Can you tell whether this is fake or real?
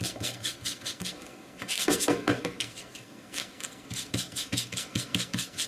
fake